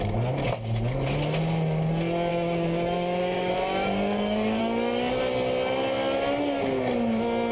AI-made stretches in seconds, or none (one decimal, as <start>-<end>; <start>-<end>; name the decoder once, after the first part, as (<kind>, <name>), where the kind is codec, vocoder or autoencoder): 2.3-4.6 (codec, DAC)